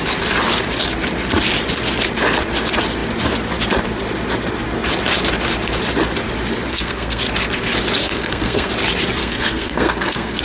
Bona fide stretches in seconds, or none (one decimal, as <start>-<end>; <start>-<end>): 0.0-6.7; 7.2-8.0; 8.7-9.2